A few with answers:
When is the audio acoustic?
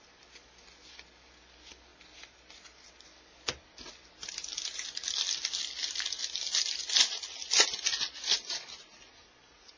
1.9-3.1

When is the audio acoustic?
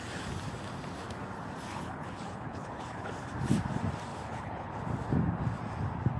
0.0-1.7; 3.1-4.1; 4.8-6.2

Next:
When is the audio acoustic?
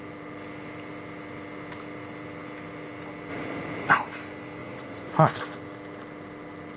0.0-3.3; 3.9-4.6; 5.3-6.8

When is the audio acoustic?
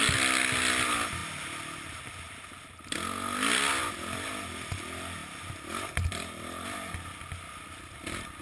0.0-8.4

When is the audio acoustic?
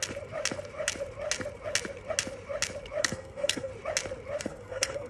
0.0-3.0; 3.7-4.4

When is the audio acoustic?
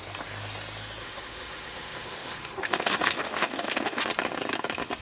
0.0-1.0; 4.0-5.0